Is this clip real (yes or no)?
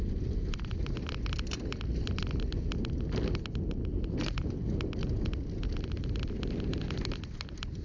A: yes